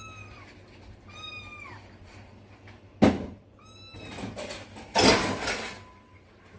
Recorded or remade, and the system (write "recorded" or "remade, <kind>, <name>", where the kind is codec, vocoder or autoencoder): recorded